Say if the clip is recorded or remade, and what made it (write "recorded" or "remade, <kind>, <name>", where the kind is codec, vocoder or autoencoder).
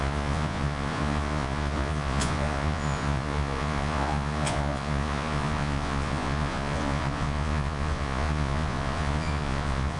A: remade, vocoder, Vocos